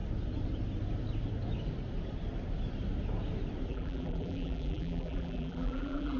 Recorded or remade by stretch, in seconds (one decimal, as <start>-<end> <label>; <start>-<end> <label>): 0.0-3.7 recorded; 3.7-6.2 remade